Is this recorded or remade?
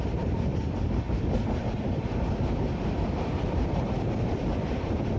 remade